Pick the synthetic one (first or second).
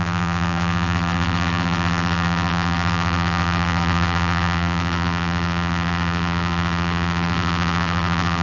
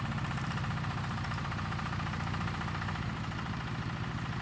first